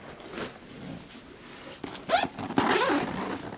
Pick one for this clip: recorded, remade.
recorded